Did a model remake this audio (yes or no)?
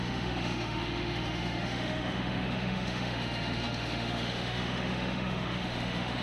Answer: yes